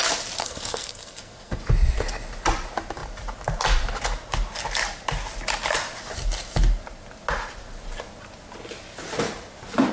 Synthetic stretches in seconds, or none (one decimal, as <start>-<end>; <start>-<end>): 0.4-1.6